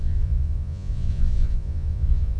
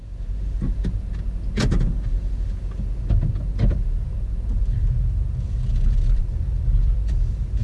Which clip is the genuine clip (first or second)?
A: second